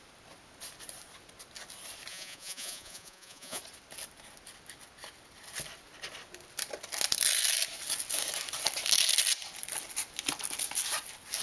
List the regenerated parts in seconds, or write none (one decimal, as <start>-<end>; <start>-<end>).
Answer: 2.1-3.6